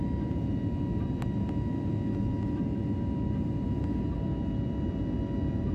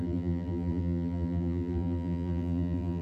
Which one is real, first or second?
first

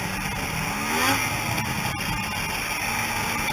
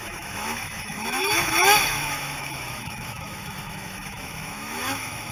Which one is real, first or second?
first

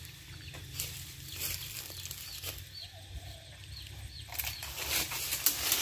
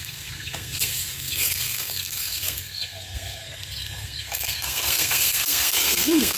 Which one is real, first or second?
first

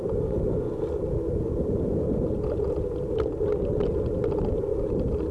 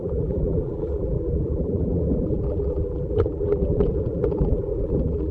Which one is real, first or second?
first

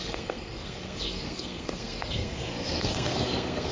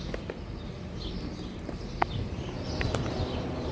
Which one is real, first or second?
second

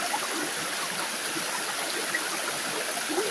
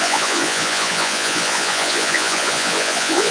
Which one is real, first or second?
first